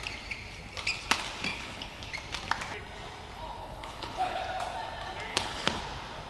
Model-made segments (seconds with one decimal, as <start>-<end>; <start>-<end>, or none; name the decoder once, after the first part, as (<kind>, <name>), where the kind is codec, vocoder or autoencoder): 1.5-2.1 (codec, HILCodec); 3.6-4.4; 5.3-5.8